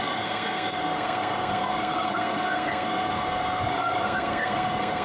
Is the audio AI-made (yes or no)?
yes